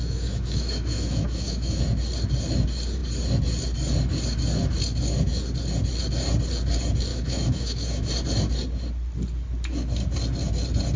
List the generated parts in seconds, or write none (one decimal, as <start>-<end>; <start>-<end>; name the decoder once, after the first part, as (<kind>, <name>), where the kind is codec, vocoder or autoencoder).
0.0-1.8 (autoencoder, DAC-VAE); 7.1-8.1